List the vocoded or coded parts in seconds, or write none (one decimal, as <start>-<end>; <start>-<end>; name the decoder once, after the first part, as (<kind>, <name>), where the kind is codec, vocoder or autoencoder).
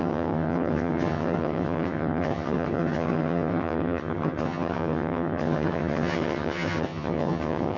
0.0-7.8 (vocoder, HiFi-GAN)